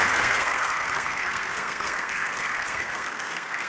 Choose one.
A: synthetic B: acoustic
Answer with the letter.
A